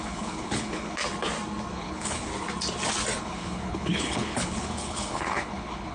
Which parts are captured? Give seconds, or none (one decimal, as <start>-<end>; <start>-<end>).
1.0-1.7; 2.3-3.2